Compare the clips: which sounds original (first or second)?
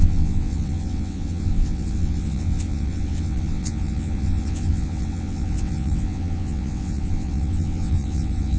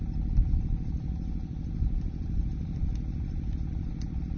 second